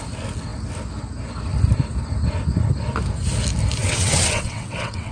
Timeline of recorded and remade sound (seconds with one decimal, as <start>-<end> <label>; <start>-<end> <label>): 0.0-3.8 recorded; 3.8-5.1 remade